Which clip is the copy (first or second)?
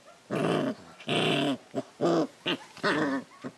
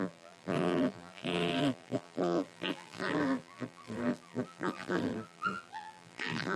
second